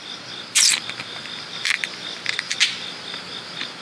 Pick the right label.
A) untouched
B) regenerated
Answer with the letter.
A